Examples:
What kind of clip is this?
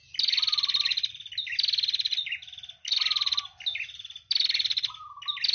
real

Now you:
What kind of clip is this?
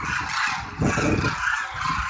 real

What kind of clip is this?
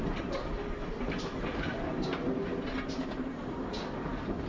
real